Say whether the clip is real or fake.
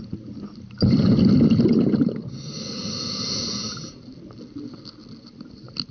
real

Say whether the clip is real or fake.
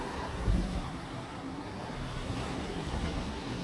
fake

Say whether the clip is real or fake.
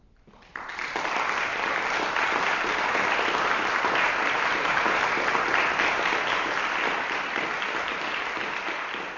real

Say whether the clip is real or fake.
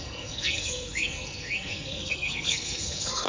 fake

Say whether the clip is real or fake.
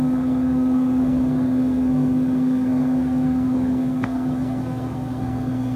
fake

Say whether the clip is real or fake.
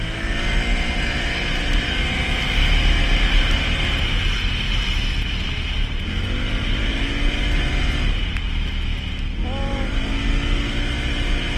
real